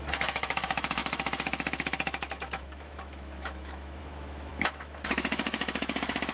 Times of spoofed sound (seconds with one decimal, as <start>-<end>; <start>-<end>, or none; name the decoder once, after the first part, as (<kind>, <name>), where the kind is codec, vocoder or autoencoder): 0.0-6.3 (autoencoder, DAC-VAE)